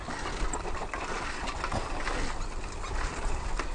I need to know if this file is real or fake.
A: real